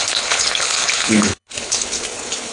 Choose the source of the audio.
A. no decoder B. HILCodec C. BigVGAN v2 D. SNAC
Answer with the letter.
B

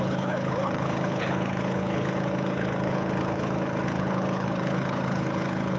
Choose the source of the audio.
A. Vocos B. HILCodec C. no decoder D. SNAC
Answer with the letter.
B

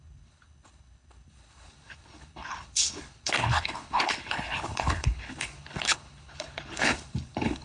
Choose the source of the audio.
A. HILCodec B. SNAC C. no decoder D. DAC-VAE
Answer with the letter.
A